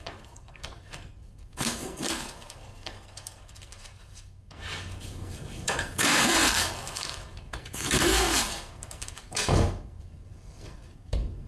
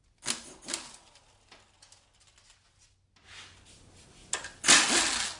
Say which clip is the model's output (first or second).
first